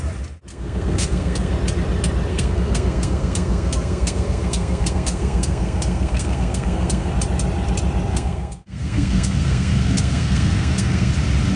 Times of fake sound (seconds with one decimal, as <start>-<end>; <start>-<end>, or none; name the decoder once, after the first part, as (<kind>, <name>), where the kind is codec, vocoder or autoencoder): 0.5-1.5 (codec, SNAC); 2.3-7.1; 8.1-11.1